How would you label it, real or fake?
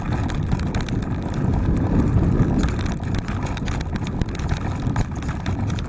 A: real